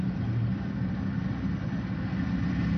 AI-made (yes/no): no